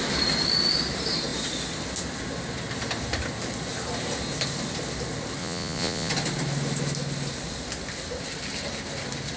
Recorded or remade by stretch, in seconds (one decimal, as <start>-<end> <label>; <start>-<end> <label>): 0.0-5.4 recorded; 5.4-6.1 remade; 6.1-9.4 recorded